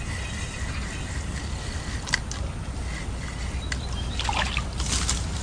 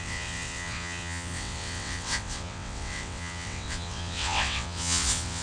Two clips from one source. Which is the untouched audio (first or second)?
first